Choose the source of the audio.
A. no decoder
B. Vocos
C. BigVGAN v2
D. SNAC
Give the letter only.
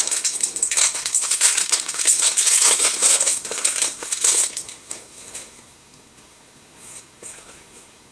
D